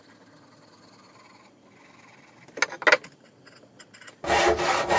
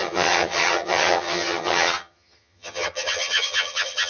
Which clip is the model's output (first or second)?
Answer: second